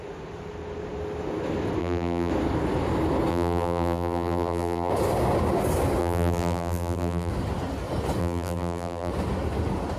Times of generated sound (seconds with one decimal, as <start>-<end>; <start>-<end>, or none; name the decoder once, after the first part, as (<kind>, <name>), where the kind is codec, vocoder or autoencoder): 1.8-2.3 (vocoder, BigVGAN v2); 3.3-4.9; 6.0-7.3; 8.2-9.1